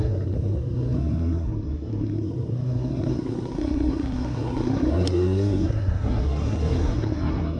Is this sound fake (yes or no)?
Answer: yes